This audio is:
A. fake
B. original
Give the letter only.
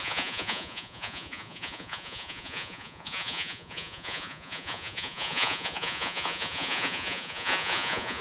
A